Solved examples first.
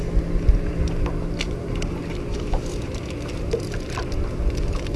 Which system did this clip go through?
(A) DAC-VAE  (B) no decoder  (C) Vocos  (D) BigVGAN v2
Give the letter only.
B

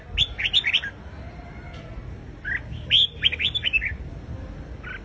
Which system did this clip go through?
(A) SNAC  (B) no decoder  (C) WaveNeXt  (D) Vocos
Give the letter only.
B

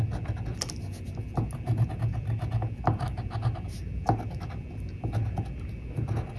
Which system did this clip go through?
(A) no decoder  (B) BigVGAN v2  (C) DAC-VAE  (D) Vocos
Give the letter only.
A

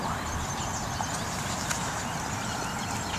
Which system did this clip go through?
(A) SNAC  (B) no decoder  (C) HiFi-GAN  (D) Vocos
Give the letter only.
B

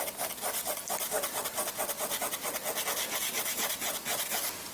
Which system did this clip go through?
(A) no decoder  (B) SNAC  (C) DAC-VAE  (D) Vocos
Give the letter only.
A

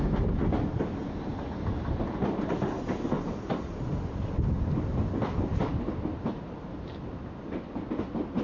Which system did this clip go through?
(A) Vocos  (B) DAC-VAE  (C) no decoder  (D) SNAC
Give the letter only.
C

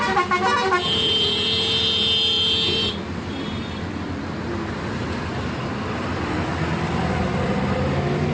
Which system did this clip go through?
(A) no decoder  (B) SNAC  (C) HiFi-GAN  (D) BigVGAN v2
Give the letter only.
A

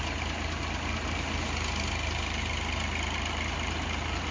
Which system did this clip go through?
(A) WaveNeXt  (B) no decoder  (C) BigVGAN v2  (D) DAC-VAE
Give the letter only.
B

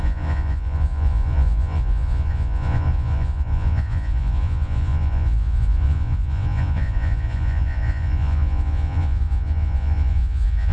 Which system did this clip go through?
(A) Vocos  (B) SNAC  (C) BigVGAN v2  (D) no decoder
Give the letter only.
A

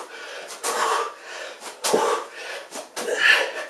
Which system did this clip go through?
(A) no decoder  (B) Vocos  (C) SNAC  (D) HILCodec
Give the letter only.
A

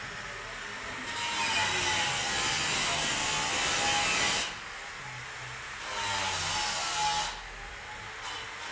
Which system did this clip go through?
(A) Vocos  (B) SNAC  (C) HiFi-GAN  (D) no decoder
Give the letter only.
D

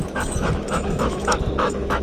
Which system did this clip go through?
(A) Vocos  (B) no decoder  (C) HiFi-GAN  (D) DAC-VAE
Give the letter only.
D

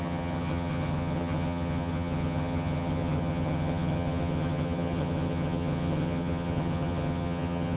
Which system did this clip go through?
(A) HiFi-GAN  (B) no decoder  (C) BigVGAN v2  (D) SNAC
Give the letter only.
A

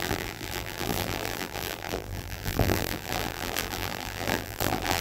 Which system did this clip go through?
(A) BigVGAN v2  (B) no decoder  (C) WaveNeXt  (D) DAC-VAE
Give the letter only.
A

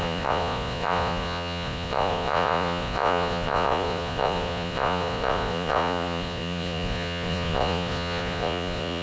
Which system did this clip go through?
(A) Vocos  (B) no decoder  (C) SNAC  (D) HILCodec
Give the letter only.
A